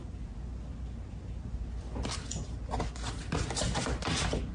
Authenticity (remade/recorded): recorded